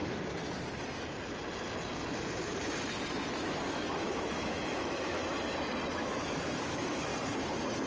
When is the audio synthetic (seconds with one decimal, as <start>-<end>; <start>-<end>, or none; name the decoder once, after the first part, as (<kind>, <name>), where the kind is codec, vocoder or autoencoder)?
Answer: 3.7-5.2 (autoencoder, DAC-VAE); 5.9-7.1